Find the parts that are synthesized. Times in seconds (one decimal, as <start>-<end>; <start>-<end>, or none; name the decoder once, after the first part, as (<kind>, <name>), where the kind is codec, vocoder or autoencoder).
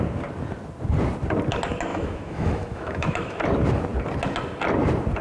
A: 1.9-3.4 (autoencoder, DAC-VAE)